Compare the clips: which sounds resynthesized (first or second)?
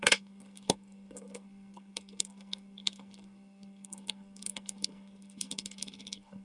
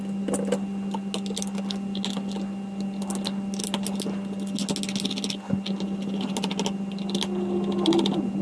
first